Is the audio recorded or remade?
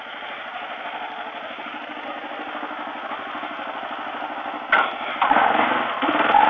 recorded